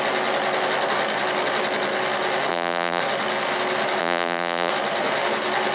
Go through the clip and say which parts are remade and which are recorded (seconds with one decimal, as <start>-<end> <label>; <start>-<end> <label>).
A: 0.0-2.5 recorded; 2.5-3.0 remade; 3.0-4.0 recorded; 4.0-4.7 remade; 4.7-5.7 recorded